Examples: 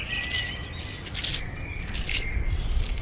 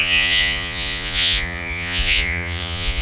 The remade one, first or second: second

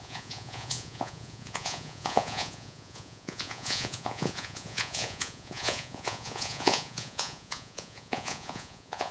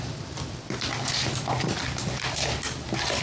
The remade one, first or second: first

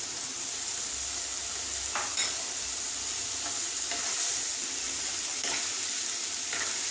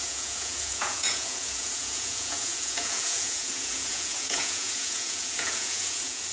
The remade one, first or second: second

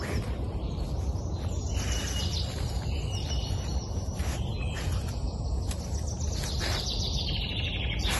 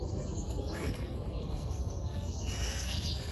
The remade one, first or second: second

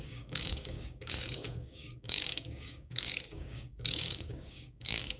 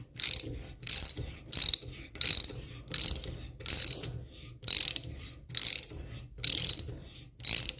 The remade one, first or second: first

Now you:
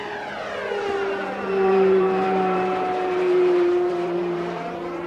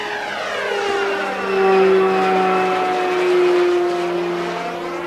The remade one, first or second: first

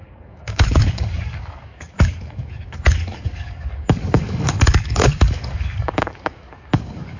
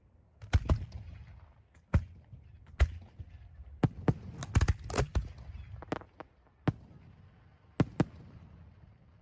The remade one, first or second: first